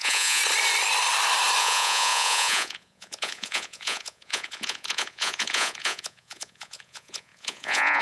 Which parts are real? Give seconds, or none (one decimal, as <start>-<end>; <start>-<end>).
0.4-1.6